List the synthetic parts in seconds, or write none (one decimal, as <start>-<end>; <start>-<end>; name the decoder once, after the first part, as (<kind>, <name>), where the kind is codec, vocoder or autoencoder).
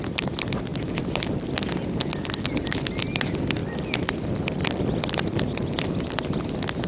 none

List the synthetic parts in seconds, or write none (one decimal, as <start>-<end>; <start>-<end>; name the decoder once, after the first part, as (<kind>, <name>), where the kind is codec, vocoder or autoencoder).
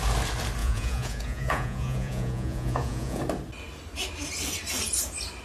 0.6-3.2 (vocoder, Vocos)